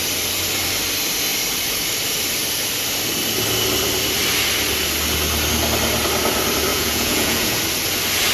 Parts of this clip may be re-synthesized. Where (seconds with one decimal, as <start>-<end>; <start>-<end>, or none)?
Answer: 6.7-7.6